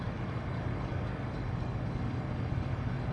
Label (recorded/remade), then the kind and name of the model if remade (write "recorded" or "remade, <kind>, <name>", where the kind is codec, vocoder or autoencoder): remade, codec, DAC